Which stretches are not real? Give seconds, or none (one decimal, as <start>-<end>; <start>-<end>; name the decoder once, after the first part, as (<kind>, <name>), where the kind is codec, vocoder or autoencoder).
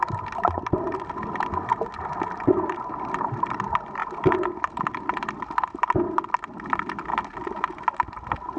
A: none